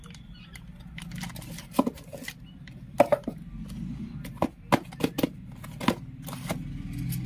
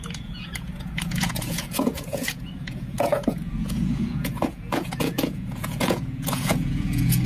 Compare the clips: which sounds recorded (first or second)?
first